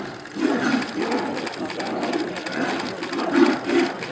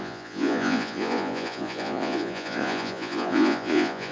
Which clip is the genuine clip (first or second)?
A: first